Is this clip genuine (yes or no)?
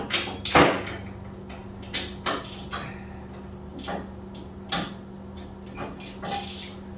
yes